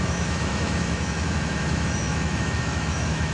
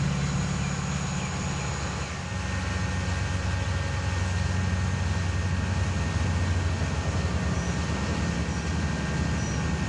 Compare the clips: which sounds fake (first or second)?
first